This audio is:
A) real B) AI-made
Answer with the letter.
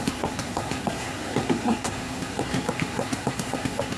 B